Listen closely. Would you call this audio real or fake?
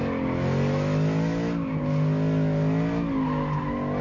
real